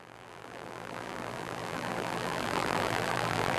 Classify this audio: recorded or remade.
remade